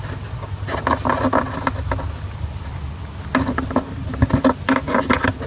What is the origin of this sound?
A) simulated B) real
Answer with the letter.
B